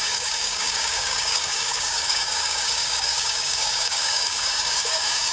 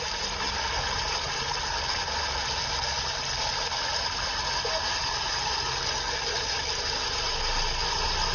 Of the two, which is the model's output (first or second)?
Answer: first